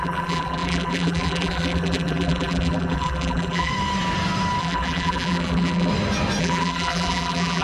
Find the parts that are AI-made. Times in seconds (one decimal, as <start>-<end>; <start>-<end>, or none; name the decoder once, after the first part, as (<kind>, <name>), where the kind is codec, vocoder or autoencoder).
0.0-3.7 (vocoder, BigVGAN v2); 4.6-5.9; 6.4-7.6